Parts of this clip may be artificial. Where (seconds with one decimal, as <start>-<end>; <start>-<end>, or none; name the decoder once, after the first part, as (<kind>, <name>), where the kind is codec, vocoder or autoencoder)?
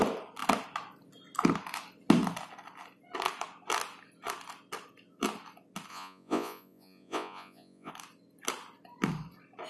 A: 5.9-7.9 (vocoder, Vocos)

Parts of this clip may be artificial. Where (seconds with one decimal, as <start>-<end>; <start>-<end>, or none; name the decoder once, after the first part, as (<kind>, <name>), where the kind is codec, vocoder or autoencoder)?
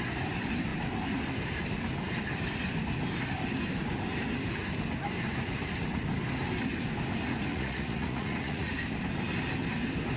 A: 7.5-8.7 (vocoder, Vocos)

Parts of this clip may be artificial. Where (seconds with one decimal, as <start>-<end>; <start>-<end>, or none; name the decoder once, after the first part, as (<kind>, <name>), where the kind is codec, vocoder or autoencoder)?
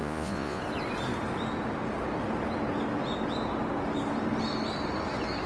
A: 0.0-0.6 (vocoder, Vocos)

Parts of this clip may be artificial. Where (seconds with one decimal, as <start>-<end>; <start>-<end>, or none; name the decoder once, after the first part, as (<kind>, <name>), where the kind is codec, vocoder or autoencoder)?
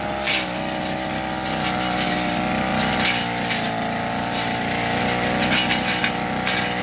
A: none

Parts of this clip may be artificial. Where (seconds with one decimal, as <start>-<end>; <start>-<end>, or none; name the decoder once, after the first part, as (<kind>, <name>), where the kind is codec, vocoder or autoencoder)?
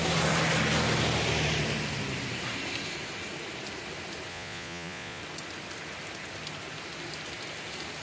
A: 4.3-5.2 (vocoder, Vocos)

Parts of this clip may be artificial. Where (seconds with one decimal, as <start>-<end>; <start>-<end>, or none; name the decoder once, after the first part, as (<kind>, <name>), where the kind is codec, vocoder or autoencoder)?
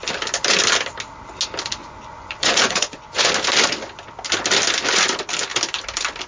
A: 1.8-3.3 (vocoder, Vocos)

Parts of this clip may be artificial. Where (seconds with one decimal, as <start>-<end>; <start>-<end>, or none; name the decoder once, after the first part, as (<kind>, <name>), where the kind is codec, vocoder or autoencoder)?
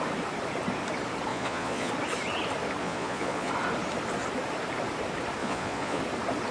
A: 1.3-1.9 (vocoder, Vocos); 2.8-3.5; 5.4-6.0